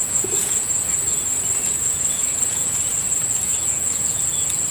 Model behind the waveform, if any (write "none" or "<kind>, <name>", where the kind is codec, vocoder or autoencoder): vocoder, Vocos